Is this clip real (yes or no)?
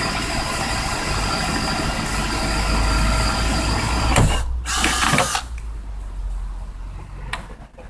yes